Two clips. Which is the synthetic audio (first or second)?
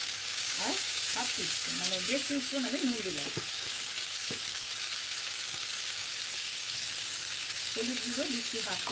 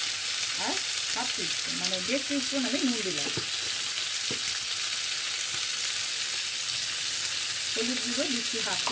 first